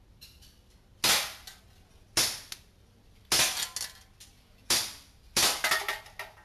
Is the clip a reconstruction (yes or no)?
no